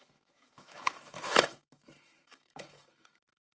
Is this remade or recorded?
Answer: remade